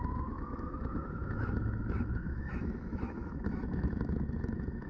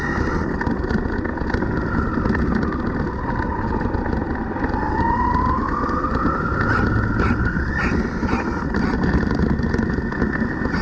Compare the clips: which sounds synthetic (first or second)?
first